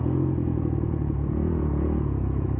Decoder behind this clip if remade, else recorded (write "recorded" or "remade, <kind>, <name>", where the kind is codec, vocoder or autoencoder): remade, vocoder, Vocos